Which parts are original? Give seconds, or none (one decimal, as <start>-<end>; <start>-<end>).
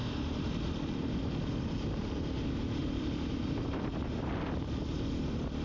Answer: 1.1-2.8; 4.3-5.6